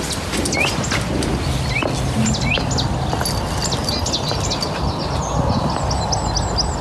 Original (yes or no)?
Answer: yes